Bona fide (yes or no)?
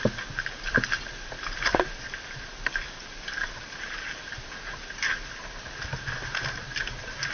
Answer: no